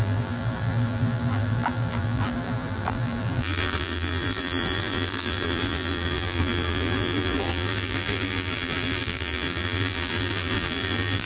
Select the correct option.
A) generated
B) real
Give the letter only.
A